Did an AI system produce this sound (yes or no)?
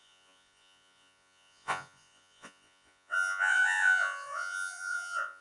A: yes